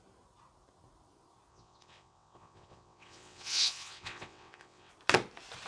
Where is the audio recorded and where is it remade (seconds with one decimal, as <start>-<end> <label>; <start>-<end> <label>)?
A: 0.0-1.5 recorded; 1.5-4.9 remade; 4.9-5.7 recorded